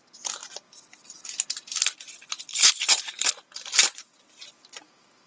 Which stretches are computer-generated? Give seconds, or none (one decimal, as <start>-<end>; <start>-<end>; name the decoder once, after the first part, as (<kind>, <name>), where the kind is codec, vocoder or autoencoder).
2.5-3.3 (codec, HILCodec)